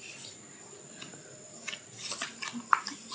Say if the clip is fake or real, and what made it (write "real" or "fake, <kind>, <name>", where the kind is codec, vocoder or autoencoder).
real